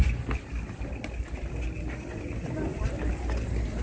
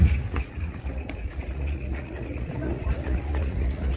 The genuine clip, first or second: first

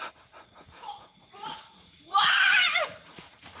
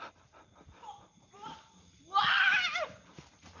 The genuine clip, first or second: second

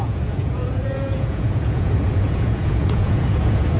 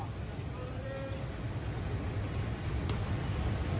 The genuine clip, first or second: second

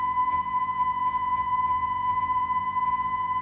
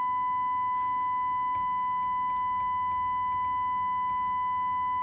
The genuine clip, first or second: second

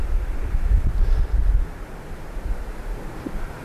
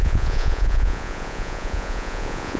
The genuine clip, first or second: first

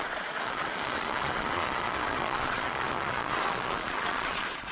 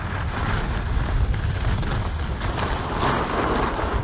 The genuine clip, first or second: second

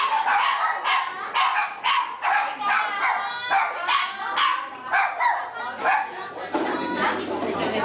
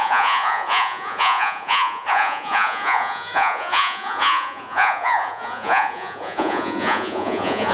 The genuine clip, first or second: first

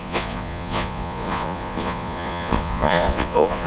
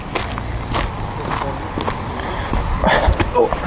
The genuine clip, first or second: second